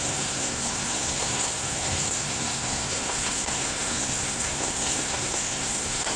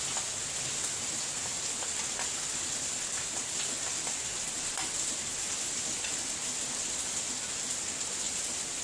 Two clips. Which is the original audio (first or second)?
second